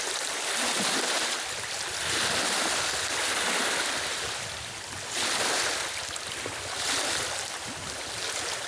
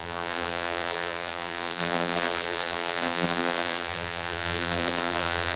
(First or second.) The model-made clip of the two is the second